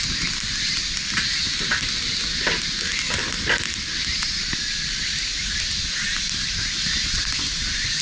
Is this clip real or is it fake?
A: real